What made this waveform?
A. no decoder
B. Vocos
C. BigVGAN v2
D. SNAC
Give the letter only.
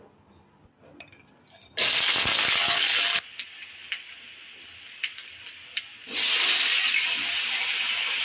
A